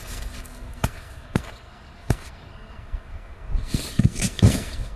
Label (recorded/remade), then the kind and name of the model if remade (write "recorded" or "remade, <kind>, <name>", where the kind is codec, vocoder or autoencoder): remade, codec, SNAC